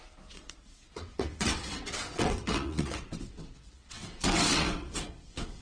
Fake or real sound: fake